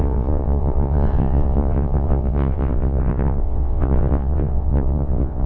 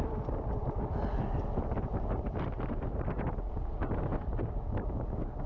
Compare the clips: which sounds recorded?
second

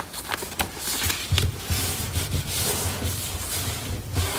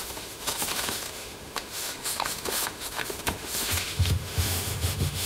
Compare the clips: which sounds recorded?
first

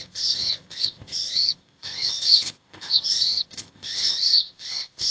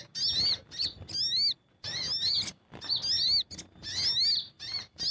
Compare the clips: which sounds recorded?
second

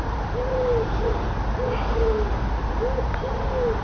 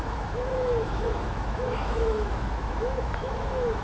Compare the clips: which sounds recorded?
first